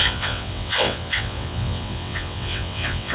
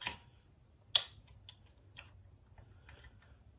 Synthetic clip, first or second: first